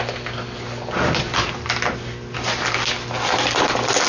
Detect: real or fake real